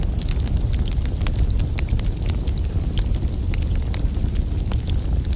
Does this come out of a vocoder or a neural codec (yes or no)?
no